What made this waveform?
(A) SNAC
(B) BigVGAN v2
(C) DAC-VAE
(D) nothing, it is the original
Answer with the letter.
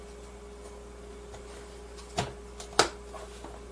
D